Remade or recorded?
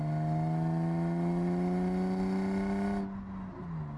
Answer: recorded